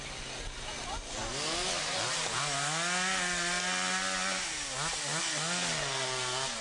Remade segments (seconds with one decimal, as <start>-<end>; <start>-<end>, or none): none